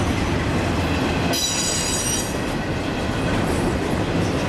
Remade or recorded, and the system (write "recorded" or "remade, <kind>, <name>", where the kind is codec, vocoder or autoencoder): recorded